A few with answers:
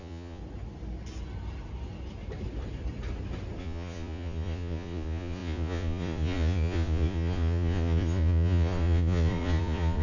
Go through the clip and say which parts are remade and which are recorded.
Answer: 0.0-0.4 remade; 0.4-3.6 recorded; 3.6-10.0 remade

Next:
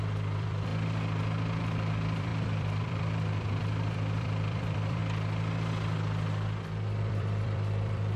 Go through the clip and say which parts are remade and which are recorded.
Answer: 0.0-0.7 remade; 0.7-1.6 recorded; 1.6-5.0 remade; 5.0-7.0 recorded; 7.0-8.2 remade

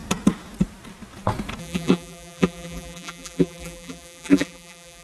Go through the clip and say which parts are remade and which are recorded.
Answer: 0.0-1.6 recorded; 1.6-5.0 remade

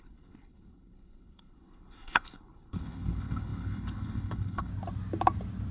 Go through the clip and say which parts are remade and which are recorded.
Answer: 0.0-4.7 remade; 4.7-5.7 recorded

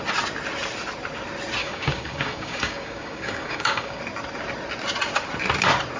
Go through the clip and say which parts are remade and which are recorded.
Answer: 0.0-1.6 recorded; 1.6-4.0 remade; 4.0-6.0 recorded

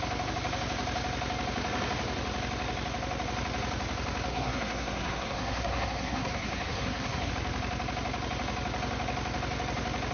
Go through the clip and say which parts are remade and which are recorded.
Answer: 0.0-4.3 recorded; 4.3-7.3 remade; 7.3-10.1 recorded